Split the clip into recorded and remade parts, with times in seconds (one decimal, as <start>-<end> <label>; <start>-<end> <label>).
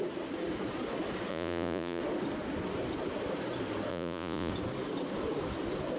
0.0-1.3 recorded; 1.3-2.0 remade; 2.0-3.9 recorded; 3.9-4.5 remade; 4.5-6.0 recorded